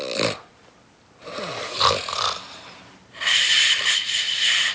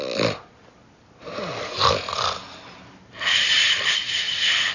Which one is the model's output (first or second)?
first